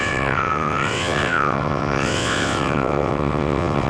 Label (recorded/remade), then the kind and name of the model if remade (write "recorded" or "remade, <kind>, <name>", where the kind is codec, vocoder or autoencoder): remade, vocoder, WaveNeXt